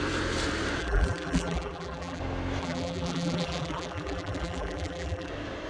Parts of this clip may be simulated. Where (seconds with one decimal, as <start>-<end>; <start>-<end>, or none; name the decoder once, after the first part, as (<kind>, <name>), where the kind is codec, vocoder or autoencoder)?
0.8-2.2 (vocoder, BigVGAN v2); 2.6-5.3